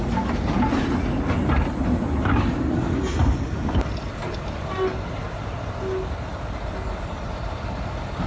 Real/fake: real